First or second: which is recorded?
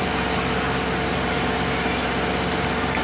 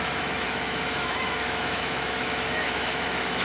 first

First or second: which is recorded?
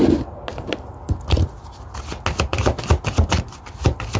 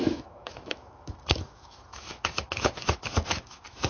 first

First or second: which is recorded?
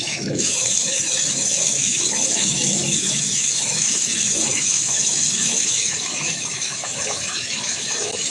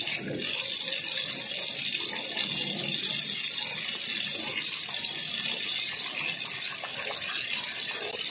second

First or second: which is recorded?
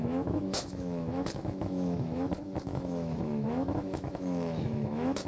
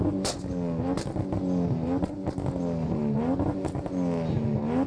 second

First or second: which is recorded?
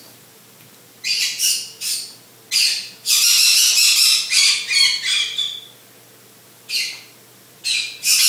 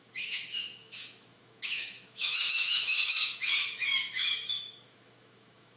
first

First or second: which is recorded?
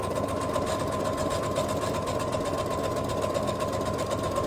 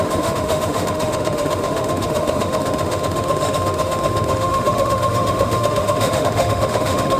first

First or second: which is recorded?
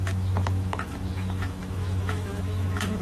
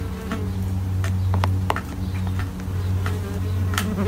second